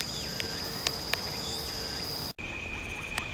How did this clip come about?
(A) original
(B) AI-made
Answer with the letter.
A